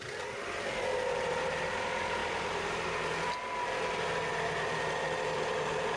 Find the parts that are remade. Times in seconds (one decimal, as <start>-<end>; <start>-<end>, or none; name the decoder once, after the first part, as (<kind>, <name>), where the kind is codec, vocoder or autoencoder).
0.0-2.2 (vocoder, BigVGAN v2); 5.2-6.0